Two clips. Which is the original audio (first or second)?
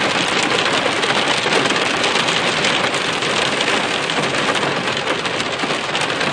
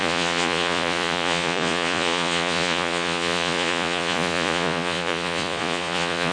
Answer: first